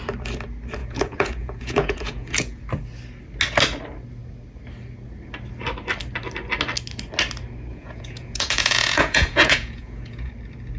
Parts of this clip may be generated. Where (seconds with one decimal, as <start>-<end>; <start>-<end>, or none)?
0.8-2.6; 7.7-10.3